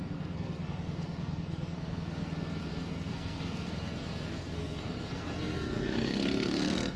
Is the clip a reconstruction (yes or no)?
yes